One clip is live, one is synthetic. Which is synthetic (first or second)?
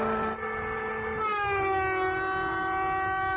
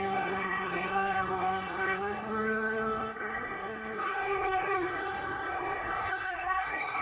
second